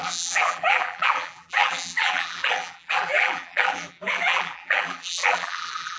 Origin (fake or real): fake